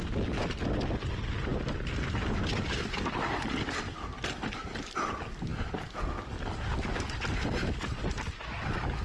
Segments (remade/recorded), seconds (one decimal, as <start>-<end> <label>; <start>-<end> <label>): 0.0-9.0 recorded